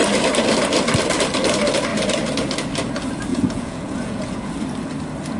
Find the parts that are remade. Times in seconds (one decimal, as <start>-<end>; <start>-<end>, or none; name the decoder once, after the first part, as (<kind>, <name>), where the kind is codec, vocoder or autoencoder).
3.3-4.5 (vocoder, Vocos)